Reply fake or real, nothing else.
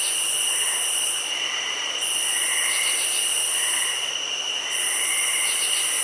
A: real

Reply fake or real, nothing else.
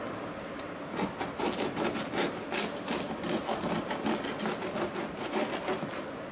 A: real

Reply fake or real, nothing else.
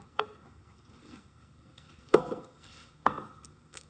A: fake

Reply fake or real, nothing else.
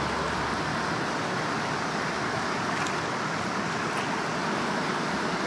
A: real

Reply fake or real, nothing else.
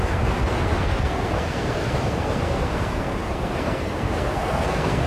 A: fake